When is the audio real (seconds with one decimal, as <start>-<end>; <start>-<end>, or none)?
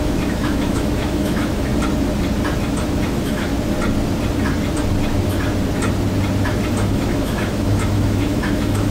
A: 1.7-3.1; 3.5-6.9